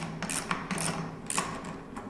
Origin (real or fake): real